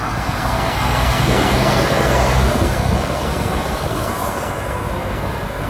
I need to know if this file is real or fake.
fake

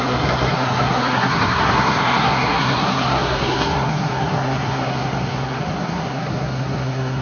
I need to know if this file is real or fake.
fake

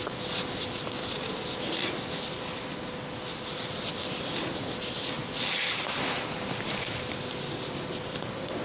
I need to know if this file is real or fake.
real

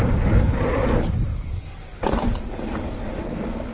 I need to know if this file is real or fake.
real